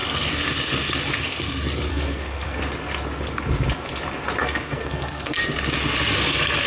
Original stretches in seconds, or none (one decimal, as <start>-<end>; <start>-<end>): 0.0-1.9; 2.6-4.4; 5.4-6.7